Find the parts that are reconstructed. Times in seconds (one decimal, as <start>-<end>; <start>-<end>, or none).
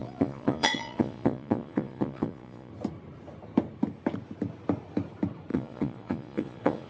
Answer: 0.0-2.7; 5.5-6.9